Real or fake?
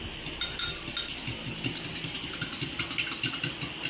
real